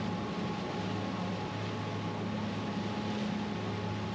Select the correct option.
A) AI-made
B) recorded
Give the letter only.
B